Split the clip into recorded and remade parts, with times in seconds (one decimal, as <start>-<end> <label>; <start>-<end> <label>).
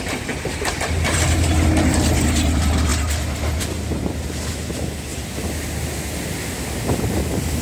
0.0-7.6 recorded